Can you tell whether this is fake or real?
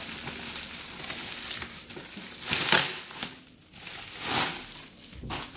real